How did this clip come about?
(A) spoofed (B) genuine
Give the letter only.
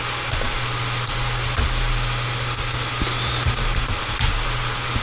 B